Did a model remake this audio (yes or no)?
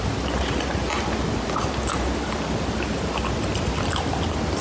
no